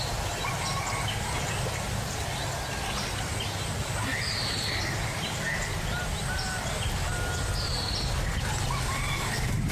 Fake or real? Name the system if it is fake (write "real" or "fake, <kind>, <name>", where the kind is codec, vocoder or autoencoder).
real